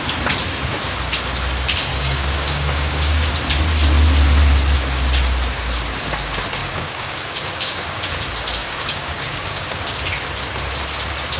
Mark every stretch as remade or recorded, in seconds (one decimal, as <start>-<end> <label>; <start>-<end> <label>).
0.0-1.9 recorded; 1.9-3.3 remade; 3.3-6.6 recorded; 6.6-8.1 remade; 8.1-8.6 recorded; 8.6-10.0 remade; 10.0-11.4 recorded